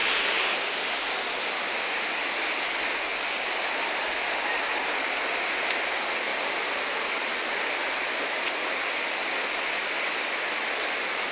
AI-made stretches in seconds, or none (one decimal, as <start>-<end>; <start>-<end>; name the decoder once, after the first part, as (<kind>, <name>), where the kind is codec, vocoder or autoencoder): 0.0-0.6 (vocoder, BigVGAN v2); 3.1-4.3; 6.3-8.2